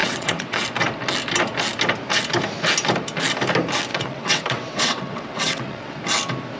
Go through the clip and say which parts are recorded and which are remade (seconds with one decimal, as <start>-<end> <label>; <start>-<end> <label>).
0.0-0.6 remade; 0.6-3.9 recorded; 3.9-6.0 remade; 6.0-6.6 recorded